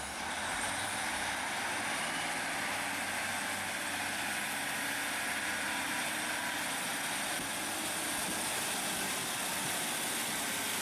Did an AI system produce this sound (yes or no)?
no